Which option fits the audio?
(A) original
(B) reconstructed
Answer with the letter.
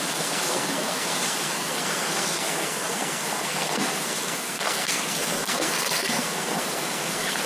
B